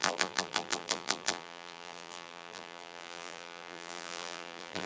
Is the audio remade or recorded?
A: remade